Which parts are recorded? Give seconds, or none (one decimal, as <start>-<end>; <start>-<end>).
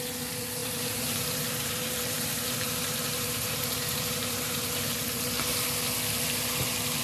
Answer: 0.0-0.6; 4.8-7.0